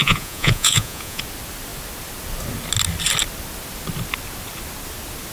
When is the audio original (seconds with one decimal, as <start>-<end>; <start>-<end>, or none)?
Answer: 1.2-5.3